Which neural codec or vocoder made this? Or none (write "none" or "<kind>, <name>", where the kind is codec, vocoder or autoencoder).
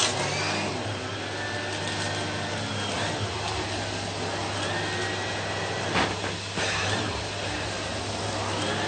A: none